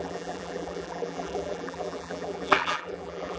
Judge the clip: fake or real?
fake